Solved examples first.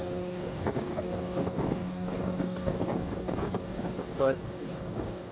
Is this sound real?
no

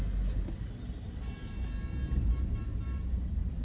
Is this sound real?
yes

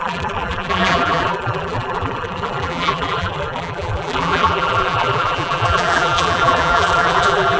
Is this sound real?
no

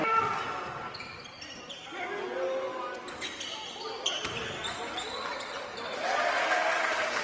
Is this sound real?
yes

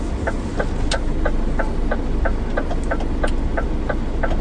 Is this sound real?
yes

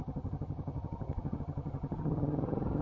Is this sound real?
no